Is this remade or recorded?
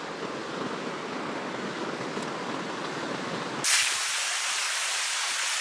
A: recorded